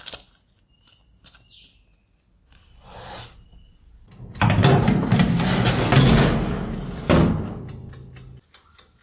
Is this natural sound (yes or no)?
yes